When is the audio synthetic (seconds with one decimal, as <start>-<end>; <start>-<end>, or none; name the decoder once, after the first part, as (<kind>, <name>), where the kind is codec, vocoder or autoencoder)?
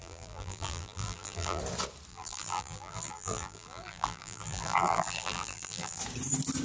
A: 0.0-1.6 (vocoder, BigVGAN v2); 2.1-6.0